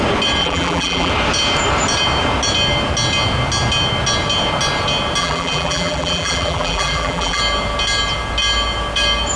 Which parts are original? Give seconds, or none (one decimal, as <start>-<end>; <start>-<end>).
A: 0.0-0.4; 1.1-5.2; 7.4-9.4